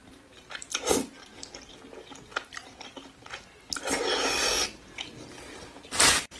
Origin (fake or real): real